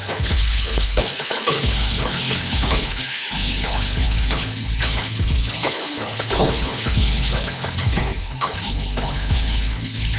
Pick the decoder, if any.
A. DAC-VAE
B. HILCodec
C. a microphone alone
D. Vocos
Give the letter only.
B